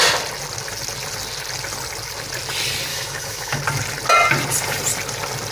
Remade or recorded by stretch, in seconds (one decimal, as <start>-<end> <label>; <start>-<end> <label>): 0.0-2.9 recorded; 2.9-3.6 remade; 3.6-5.5 recorded